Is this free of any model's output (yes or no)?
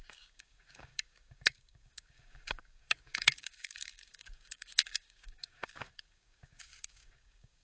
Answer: no